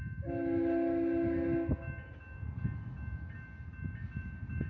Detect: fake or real real